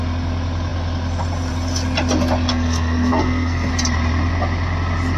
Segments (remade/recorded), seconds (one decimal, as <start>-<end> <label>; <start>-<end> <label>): 0.0-2.5 recorded; 2.5-3.7 remade; 3.7-5.2 recorded